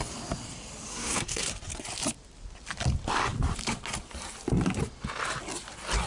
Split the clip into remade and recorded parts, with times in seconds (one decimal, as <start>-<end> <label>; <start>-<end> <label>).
0.0-0.9 recorded; 0.9-1.5 remade; 1.5-6.1 recorded